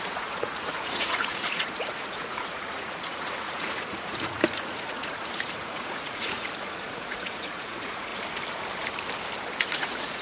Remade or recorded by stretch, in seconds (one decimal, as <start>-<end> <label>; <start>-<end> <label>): 0.0-8.1 remade; 8.1-9.6 recorded; 9.6-10.2 remade